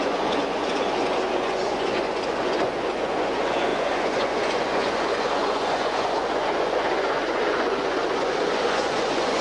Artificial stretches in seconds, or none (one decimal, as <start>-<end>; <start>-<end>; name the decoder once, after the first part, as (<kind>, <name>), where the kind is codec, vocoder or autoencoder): 0.0-9.4 (vocoder, Vocos)